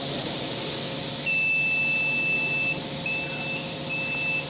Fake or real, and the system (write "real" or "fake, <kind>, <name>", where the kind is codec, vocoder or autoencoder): real